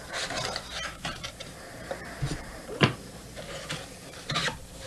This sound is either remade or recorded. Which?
remade